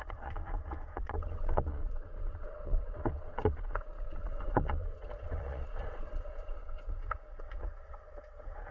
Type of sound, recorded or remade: remade